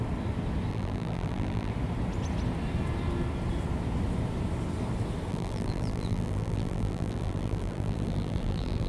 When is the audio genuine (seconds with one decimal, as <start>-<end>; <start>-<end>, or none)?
0.0-0.7; 1.7-5.3